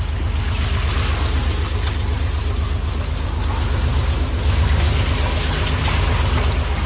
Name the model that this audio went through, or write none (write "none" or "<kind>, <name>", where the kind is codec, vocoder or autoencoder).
none